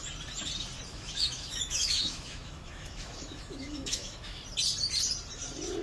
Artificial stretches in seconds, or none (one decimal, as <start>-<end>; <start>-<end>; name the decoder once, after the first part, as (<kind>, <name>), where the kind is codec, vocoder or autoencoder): 0.9-4.4 (autoencoder, DAC-VAE)